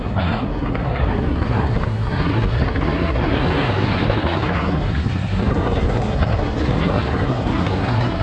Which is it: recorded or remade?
remade